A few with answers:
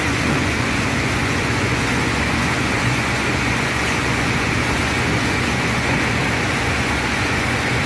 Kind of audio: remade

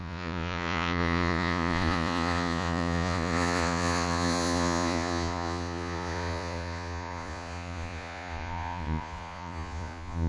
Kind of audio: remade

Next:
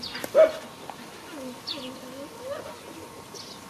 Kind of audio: recorded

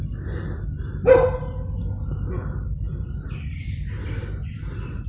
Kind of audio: recorded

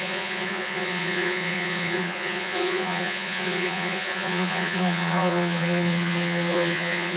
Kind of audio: remade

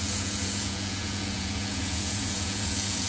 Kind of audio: remade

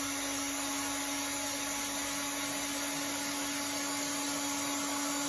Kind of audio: recorded